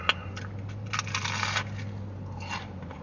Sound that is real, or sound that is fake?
real